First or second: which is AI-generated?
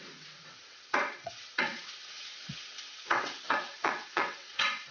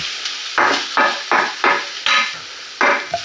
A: first